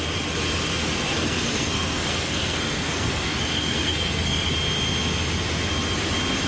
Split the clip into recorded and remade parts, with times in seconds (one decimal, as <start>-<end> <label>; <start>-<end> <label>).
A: 0.0-0.8 recorded; 0.8-4.5 remade; 4.5-6.5 recorded